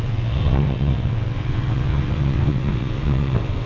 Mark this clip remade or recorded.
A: remade